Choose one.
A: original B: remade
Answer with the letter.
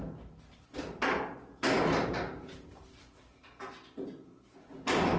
A